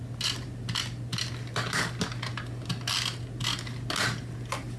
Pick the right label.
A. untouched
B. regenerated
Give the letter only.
A